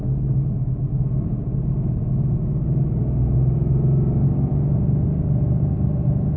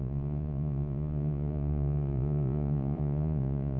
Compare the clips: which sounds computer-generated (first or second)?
second